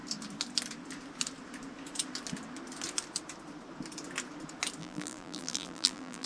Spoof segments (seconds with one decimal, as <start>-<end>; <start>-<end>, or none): 4.8-6.3